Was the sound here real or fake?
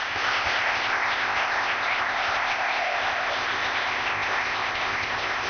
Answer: fake